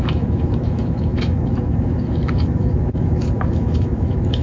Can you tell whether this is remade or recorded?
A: remade